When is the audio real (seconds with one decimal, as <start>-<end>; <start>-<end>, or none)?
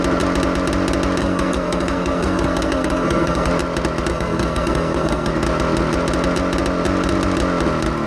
0.0-1.2; 3.5-4.1; 5.3-8.1